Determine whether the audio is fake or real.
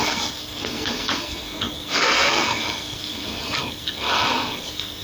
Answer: fake